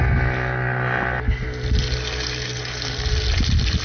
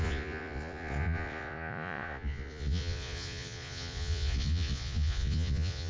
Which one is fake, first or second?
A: second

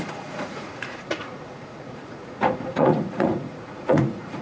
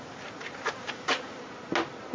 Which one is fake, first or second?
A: first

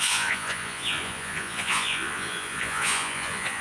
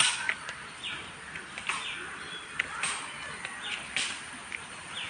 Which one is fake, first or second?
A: first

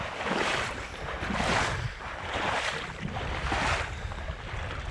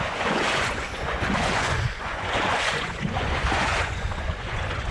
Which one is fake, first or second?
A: second